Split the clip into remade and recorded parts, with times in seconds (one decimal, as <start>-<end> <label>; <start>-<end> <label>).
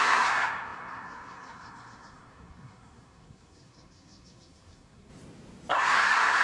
0.0-5.1 remade; 5.1-5.7 recorded; 5.7-6.4 remade